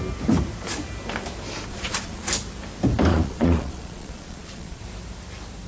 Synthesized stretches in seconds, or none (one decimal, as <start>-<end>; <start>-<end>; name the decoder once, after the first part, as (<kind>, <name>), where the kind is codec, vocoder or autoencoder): 1.7-2.3 (vocoder, Vocos); 3.1-4.8

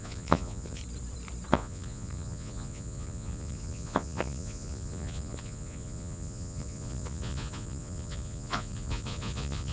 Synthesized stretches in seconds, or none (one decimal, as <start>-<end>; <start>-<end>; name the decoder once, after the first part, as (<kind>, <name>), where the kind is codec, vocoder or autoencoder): 0.0-0.8 (vocoder, Vocos); 1.5-9.7